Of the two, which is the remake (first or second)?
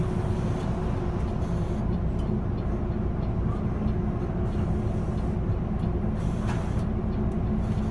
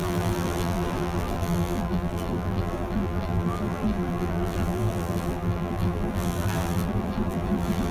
second